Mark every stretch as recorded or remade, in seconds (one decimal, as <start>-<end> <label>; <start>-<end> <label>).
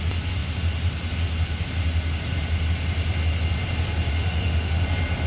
0.0-4.1 recorded; 4.1-4.8 remade; 4.8-5.3 recorded